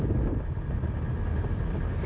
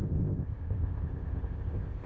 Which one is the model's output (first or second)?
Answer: second